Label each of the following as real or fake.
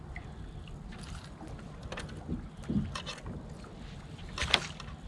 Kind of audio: real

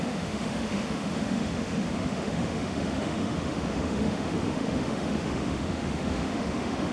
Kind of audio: fake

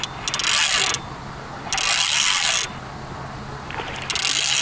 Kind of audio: real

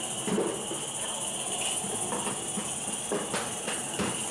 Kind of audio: real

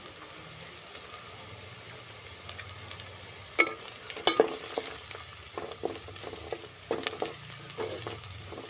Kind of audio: real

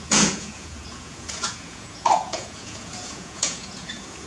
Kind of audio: fake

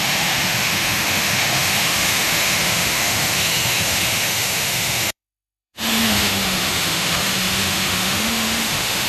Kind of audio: fake